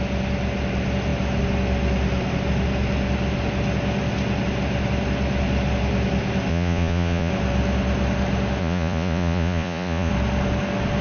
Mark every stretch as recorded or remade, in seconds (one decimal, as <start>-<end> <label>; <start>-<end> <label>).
0.0-6.5 recorded; 6.5-7.3 remade; 7.3-8.6 recorded; 8.6-10.1 remade; 10.1-11.0 recorded